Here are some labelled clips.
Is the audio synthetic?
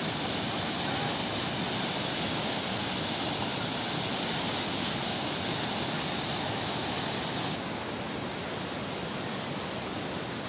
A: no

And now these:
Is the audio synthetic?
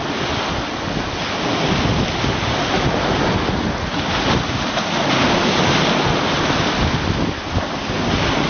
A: no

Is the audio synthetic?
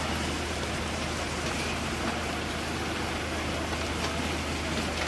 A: no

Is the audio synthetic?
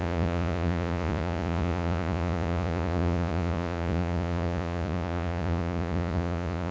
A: yes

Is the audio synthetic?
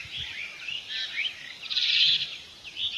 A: yes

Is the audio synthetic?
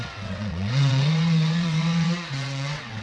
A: yes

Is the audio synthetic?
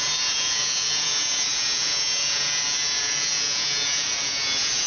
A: yes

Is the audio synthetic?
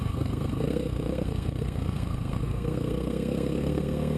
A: yes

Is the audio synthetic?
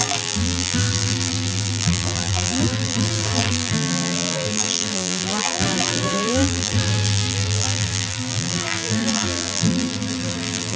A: yes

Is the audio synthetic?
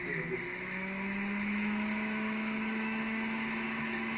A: yes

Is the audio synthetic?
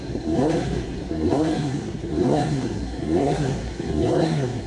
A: yes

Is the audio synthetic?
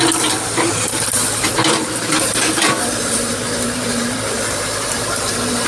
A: yes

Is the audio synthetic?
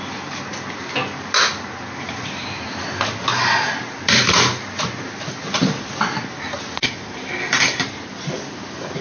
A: no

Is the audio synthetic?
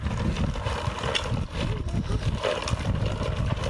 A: no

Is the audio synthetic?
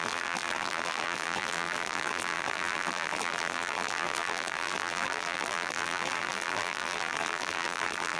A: yes